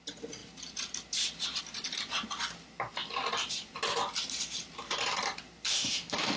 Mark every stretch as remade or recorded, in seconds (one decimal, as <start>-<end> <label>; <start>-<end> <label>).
0.0-5.7 recorded; 5.7-6.4 remade